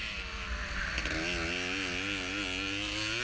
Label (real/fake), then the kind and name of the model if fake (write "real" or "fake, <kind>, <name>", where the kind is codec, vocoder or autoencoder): real